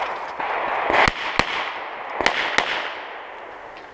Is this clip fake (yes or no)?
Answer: no